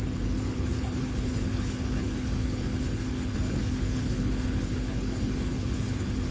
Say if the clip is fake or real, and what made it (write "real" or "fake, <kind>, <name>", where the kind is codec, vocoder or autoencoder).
fake, codec, HILCodec